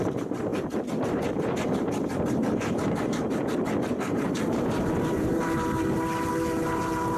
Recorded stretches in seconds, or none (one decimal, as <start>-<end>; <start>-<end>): none

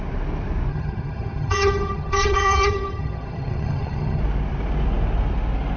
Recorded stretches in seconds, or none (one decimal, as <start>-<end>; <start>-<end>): 0.0-0.7; 4.2-5.8

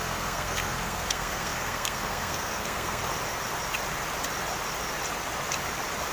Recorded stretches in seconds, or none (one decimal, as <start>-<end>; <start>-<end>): 3.0-6.1

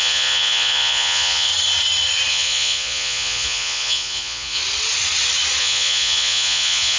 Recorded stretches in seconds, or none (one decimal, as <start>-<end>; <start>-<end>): 1.5-2.3; 4.6-5.6

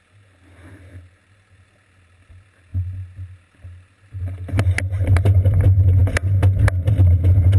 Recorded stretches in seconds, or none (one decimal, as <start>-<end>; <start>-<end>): 0.0-7.6

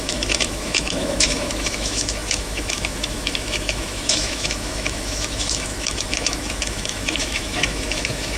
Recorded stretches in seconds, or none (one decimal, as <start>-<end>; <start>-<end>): none